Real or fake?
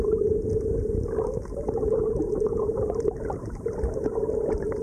real